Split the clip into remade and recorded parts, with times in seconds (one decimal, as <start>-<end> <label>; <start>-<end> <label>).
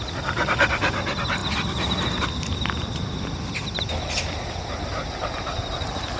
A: 0.0-6.2 recorded